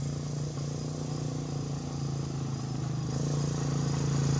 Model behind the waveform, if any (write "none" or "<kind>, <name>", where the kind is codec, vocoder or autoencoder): none